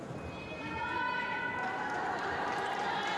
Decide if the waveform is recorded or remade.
recorded